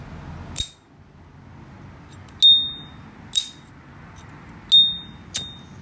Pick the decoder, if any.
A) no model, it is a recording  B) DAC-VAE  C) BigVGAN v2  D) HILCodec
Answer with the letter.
A